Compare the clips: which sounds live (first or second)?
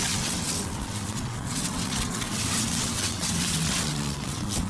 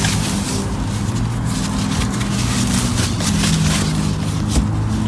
second